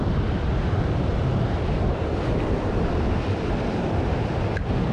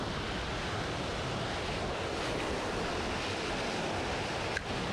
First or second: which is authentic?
second